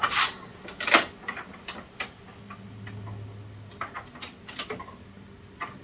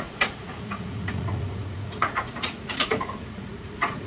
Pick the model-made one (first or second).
second